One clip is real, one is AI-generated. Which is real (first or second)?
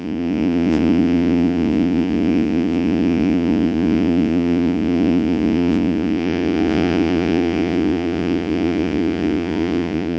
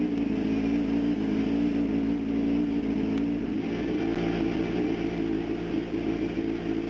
second